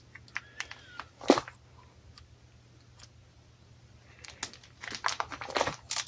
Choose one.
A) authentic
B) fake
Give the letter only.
A